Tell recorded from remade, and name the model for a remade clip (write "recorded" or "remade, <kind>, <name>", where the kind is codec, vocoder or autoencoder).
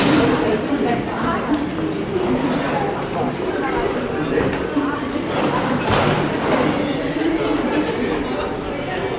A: recorded